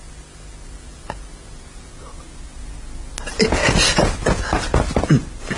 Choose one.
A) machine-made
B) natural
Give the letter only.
B